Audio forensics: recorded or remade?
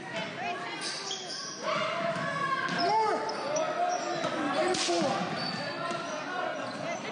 recorded